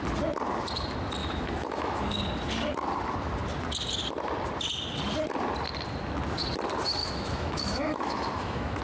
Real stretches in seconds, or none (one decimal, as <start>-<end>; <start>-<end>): 0.0-1.2; 2.2-7.0